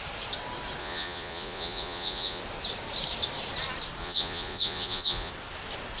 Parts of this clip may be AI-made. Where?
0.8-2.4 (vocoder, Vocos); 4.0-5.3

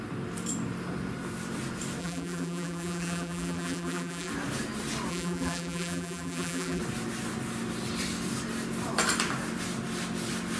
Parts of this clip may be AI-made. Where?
2.0-4.3 (vocoder, BigVGAN v2); 5.1-6.8

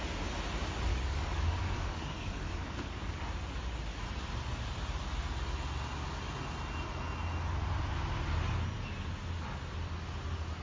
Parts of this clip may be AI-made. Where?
0.9-3.2 (codec, DAC)

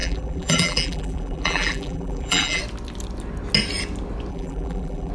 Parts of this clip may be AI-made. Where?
0.0-2.6 (vocoder, BigVGAN v2); 4.3-5.1

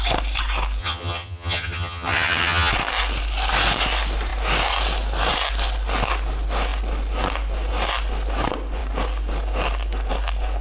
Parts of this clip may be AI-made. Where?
0.8-2.7 (vocoder, HiFi-GAN)

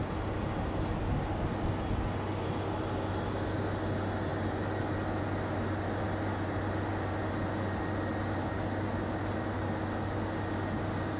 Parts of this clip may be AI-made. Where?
none

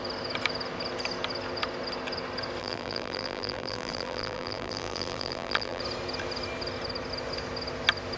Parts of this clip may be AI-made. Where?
2.6-5.8 (vocoder, BigVGAN v2)